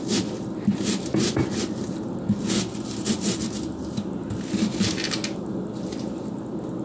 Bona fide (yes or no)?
yes